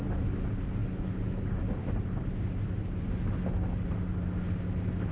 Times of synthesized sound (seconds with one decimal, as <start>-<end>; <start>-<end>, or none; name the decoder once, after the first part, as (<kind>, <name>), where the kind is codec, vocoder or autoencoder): none